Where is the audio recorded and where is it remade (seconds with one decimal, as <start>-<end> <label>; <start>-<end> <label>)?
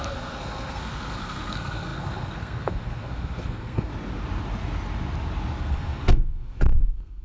0.0-3.9 remade; 3.9-5.6 recorded; 5.6-7.2 remade